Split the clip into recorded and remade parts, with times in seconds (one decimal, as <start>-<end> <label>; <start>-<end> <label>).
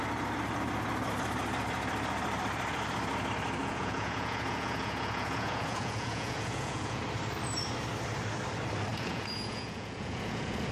0.0-3.6 recorded; 3.6-7.0 remade; 7.0-8.9 recorded; 8.9-10.7 remade